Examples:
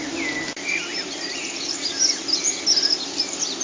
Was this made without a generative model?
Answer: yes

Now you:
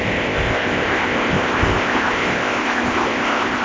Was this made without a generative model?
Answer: no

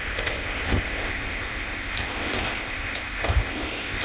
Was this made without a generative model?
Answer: no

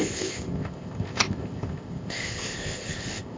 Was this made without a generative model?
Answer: no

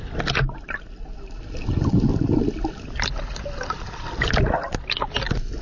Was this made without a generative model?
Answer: yes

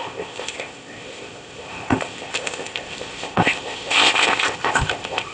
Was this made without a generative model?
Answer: no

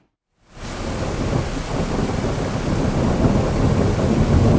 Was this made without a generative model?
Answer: yes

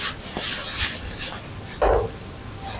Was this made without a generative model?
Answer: yes